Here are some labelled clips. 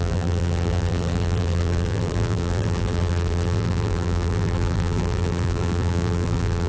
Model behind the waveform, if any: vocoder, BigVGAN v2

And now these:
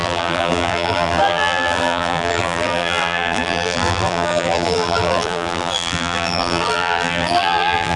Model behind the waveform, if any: vocoder, BigVGAN v2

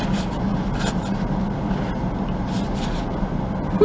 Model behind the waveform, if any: none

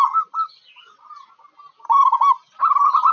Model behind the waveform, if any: none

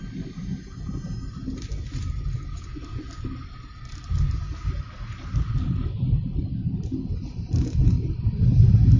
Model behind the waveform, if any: none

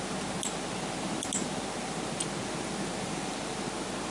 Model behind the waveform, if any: none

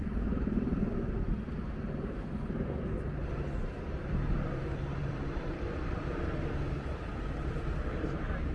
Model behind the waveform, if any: vocoder, BigVGAN v2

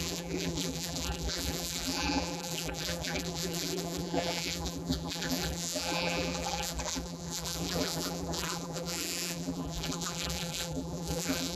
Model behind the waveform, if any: vocoder, BigVGAN v2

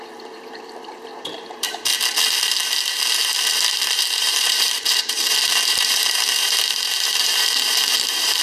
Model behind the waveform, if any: vocoder, BigVGAN v2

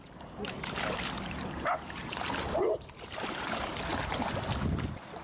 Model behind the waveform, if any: vocoder, BigVGAN v2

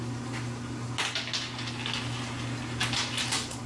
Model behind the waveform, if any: none